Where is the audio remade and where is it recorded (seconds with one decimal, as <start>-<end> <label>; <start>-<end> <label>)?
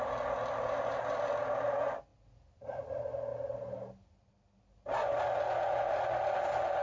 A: 0.0-2.1 recorded; 2.1-2.9 remade; 2.9-6.8 recorded